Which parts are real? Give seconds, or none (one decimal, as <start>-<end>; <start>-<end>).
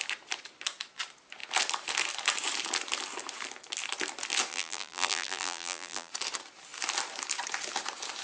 0.0-4.5; 6.1-8.2